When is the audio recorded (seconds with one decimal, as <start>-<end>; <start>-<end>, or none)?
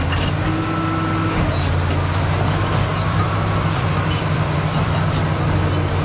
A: 0.0-2.9; 5.1-6.0